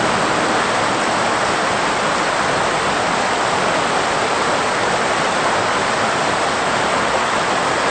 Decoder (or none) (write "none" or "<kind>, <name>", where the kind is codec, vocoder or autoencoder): none